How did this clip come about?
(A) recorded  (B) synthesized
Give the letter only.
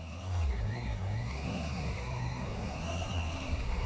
B